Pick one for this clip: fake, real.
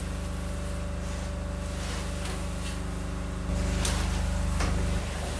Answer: real